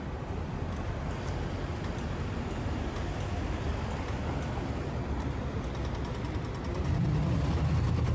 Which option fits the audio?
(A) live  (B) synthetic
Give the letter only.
A